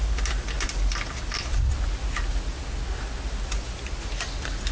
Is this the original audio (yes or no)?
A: yes